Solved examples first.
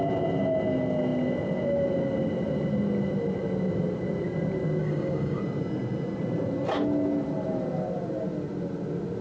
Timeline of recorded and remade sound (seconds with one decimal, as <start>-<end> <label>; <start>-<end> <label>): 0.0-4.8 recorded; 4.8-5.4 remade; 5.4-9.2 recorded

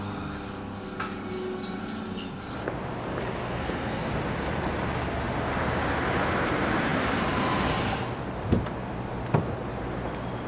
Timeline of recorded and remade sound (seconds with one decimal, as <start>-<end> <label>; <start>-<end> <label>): 0.0-3.4 recorded; 3.4-4.1 remade; 4.1-10.5 recorded

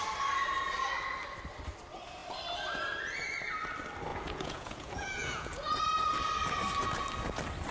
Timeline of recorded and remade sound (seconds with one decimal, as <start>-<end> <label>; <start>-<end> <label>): 0.0-4.1 recorded; 4.1-5.8 remade; 5.8-7.7 recorded

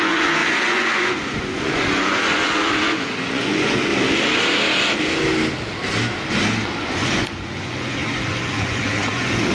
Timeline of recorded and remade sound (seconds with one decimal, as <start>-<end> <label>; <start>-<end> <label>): 0.0-3.9 remade; 3.9-6.8 recorded; 6.8-9.5 remade

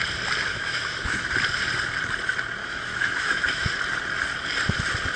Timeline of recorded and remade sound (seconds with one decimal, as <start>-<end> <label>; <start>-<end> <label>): 0.0-0.5 recorded; 0.5-1.3 remade; 1.3-2.6 recorded; 2.6-3.7 remade; 3.7-5.2 recorded

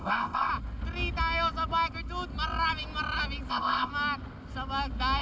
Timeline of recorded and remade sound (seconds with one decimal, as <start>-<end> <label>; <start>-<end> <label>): 0.0-0.5 remade; 0.5-3.5 recorded; 3.5-3.9 remade; 3.9-5.2 recorded

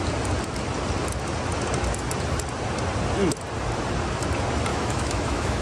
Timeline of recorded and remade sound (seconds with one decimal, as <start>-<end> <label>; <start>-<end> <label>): 0.0-4.7 recorded; 4.7-5.6 remade

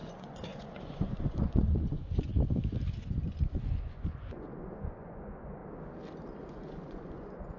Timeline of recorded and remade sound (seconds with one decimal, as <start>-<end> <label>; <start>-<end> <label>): 0.0-2.3 remade; 2.3-3.0 recorded; 3.0-5.6 remade; 5.6-6.5 recorded; 6.5-7.6 remade